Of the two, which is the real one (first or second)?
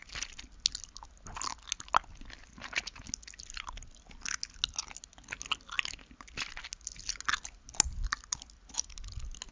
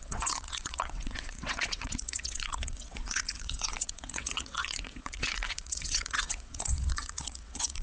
first